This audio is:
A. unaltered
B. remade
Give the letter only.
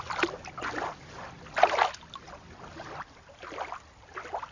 A